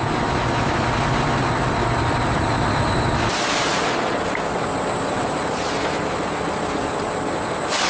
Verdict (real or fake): real